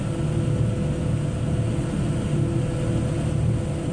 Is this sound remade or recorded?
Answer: recorded